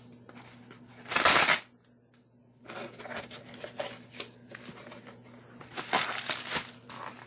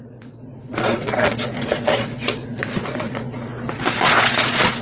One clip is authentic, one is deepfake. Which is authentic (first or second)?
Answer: first